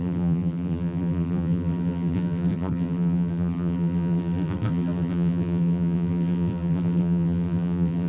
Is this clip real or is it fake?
fake